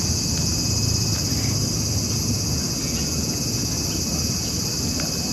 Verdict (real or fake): real